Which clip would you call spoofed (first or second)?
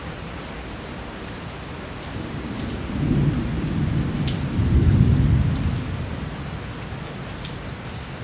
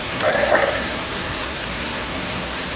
second